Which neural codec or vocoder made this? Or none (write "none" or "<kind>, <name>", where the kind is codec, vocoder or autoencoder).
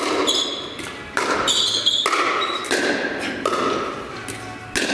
none